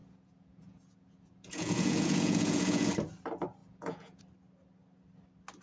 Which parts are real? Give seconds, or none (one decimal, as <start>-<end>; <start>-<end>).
2.9-3.6; 4.2-5.6

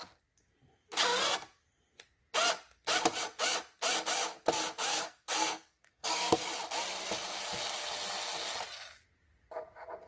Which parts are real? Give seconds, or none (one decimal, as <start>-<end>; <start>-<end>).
0.0-4.9; 6.5-10.1

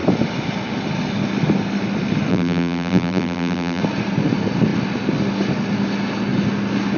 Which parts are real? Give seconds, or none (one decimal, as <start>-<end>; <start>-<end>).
0.0-2.3; 3.8-7.0